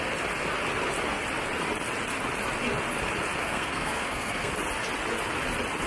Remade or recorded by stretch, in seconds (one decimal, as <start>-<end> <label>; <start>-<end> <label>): 0.0-3.4 recorded; 3.4-4.5 remade; 4.5-5.9 recorded

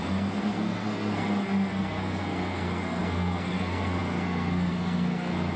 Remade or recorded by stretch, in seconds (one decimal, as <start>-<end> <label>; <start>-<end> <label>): 0.0-5.6 remade

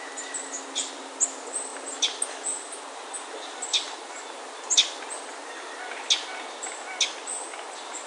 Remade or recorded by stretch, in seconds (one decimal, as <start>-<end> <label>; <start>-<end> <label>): 0.0-8.1 recorded